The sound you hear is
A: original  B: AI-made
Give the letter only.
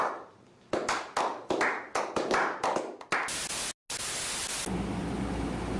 A